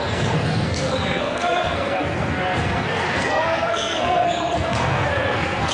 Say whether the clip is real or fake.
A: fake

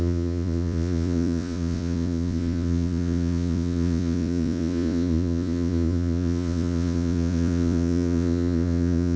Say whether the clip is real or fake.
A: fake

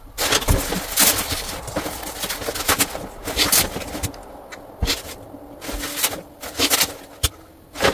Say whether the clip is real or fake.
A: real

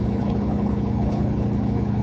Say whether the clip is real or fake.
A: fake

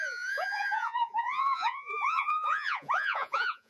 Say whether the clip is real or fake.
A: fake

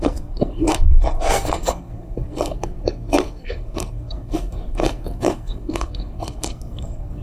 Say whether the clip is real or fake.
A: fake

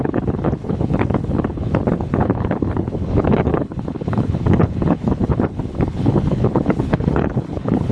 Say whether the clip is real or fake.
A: fake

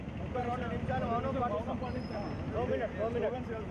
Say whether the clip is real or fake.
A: real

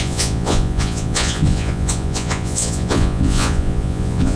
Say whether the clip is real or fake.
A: fake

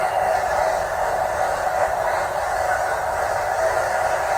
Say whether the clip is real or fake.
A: real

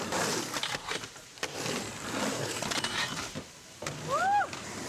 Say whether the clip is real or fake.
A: real